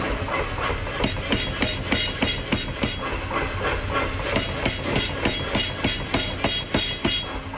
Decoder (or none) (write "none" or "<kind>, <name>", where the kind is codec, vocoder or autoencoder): none